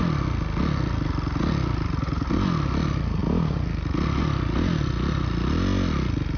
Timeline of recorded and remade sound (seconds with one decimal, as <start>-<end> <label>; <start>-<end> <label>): 0.0-6.4 recorded